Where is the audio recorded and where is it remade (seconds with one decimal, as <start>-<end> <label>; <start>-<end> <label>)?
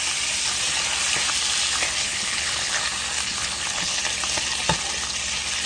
0.0-2.0 recorded; 2.0-2.8 remade; 2.8-3.3 recorded; 3.3-4.0 remade; 4.0-5.7 recorded